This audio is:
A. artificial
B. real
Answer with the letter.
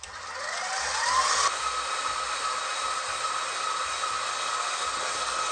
B